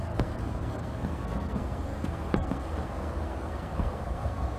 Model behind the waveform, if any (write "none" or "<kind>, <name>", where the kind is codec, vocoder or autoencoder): codec, SNAC